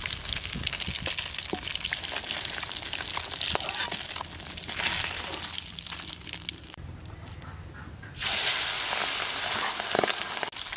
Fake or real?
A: real